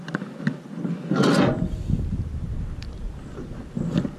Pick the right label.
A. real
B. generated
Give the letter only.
A